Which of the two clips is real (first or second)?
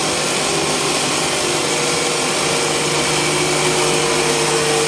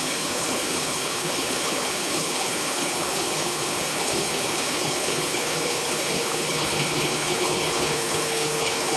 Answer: first